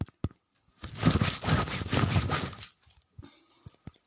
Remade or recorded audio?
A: recorded